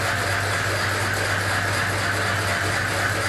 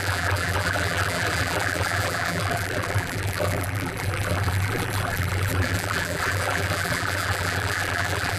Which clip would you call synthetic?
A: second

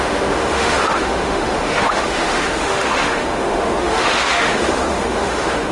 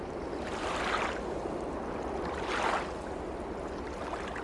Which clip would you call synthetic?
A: first